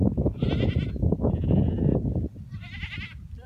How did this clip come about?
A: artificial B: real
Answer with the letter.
B